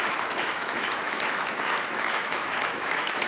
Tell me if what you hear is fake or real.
fake